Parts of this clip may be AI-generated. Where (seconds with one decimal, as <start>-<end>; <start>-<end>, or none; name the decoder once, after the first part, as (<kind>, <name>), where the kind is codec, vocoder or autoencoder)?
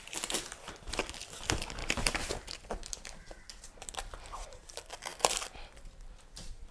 0.0-1.8 (vocoder, BigVGAN v2); 2.3-6.7